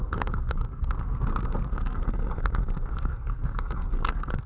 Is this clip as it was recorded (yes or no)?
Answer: no